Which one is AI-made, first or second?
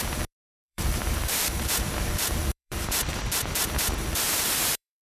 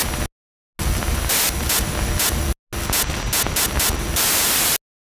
first